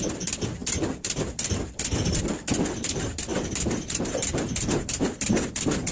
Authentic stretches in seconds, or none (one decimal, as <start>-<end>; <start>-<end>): none